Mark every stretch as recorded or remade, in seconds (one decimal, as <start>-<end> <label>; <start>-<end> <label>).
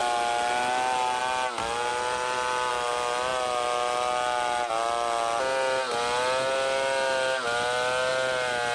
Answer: 0.0-8.7 recorded